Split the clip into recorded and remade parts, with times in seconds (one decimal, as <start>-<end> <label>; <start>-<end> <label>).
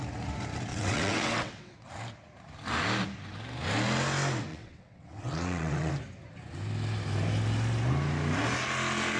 0.0-0.7 recorded; 0.7-1.9 remade; 1.9-4.5 recorded; 4.5-5.9 remade; 5.9-9.2 recorded